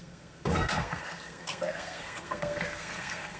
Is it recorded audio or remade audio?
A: remade